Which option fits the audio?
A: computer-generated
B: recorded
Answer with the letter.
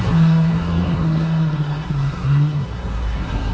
A